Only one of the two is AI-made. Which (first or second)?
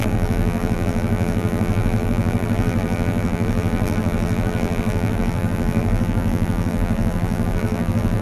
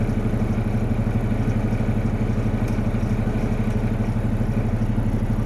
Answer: first